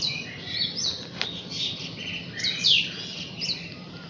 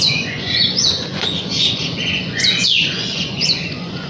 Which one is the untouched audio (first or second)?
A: first